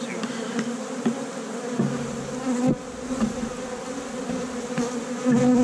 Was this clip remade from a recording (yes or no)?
no